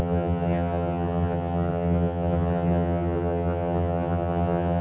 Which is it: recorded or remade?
remade